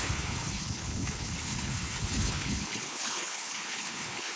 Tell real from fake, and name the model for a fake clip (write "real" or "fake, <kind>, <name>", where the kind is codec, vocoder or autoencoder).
fake, codec, HILCodec